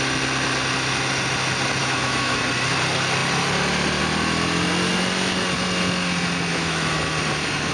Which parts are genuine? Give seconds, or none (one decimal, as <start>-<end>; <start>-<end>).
0.0-1.8; 2.4-6.5; 7.0-7.7